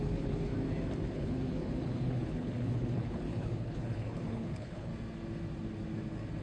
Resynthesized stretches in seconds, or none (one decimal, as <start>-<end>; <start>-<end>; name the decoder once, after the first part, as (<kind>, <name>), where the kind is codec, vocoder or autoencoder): 0.0-0.5 (codec, HILCodec); 1.1-4.9